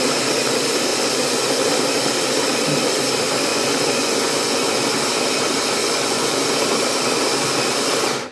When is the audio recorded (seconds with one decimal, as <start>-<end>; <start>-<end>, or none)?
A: 0.0-0.9; 1.7-3.5; 4.7-5.8; 6.4-8.3